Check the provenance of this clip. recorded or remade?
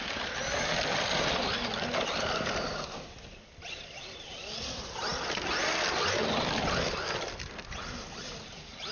recorded